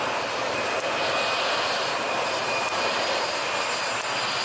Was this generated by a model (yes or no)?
no